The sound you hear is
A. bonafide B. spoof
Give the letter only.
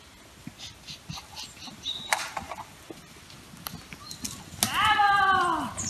A